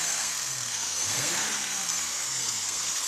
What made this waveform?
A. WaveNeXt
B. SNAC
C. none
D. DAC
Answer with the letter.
B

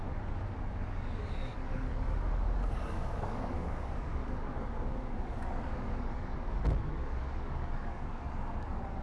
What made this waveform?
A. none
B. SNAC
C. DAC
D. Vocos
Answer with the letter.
C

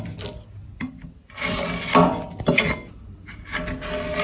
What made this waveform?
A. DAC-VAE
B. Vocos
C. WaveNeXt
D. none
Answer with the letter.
D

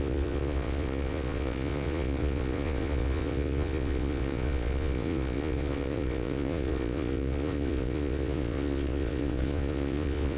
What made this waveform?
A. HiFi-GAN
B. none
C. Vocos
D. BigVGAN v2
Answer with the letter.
C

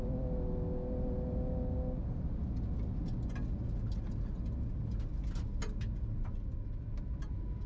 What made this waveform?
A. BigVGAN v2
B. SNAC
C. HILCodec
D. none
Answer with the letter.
D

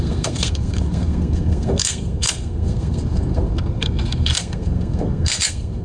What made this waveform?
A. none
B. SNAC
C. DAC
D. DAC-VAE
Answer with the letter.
B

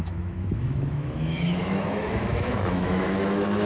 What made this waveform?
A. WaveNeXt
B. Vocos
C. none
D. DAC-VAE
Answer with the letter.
D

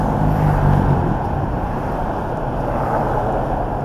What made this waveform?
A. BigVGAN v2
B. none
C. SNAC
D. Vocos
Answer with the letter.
B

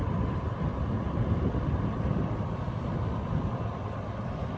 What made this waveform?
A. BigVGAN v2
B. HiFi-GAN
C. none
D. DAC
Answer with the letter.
C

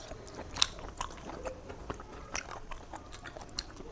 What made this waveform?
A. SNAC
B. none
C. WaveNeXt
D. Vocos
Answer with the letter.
B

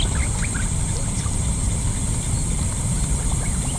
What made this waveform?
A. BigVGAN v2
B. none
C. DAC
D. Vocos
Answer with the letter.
B